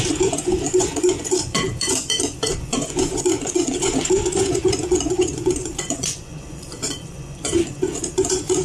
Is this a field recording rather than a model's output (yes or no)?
no